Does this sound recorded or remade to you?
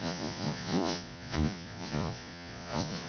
remade